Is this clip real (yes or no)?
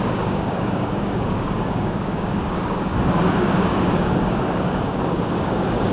no